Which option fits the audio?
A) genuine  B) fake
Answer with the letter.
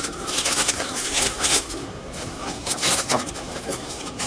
B